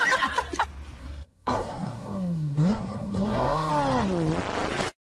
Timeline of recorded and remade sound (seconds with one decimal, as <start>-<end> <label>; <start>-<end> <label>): 0.0-1.0 recorded; 1.0-3.7 remade; 3.7-5.1 recorded